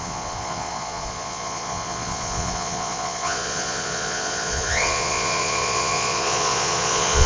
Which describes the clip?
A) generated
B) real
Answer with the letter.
A